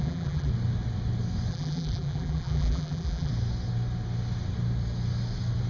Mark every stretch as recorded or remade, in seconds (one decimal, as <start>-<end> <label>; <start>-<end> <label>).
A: 0.0-0.5 remade; 0.5-1.5 recorded; 1.5-3.3 remade; 3.3-5.7 recorded